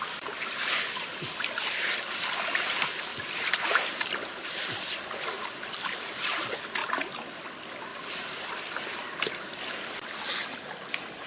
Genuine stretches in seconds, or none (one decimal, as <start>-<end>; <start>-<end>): 0.0-3.1; 4.9-6.8; 7.5-7.9; 9.6-11.3